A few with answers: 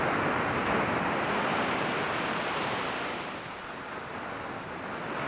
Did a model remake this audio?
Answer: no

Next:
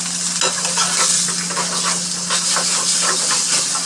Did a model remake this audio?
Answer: no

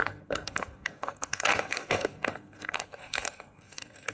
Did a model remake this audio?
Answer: yes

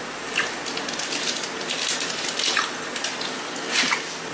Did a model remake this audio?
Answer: no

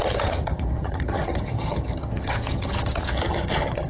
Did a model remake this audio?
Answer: yes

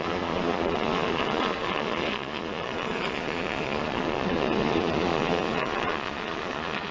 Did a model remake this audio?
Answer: yes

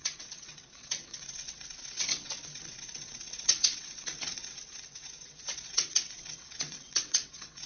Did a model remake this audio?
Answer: yes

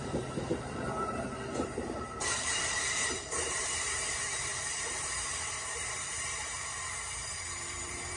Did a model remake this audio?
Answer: yes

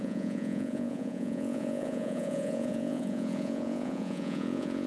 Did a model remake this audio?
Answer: yes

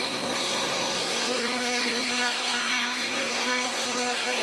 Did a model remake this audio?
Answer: yes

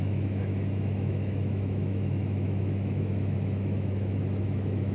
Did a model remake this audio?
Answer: yes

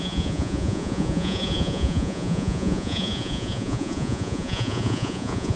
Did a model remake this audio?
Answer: yes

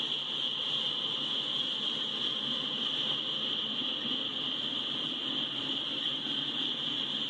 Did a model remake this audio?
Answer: no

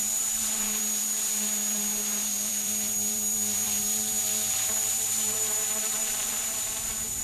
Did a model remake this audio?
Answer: yes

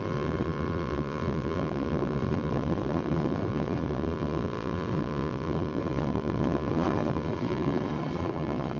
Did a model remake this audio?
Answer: yes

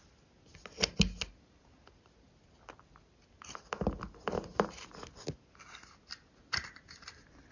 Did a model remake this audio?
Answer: no